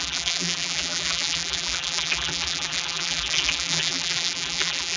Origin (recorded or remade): remade